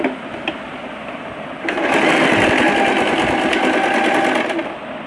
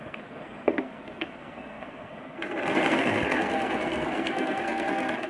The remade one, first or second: second